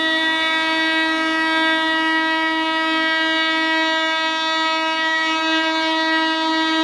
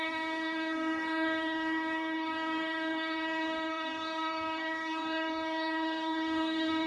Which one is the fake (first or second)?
second